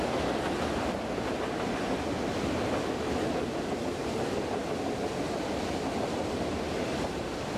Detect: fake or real real